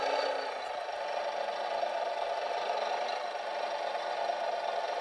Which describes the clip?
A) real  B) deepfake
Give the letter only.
A